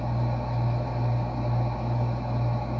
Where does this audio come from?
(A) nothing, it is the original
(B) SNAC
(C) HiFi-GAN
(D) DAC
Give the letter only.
A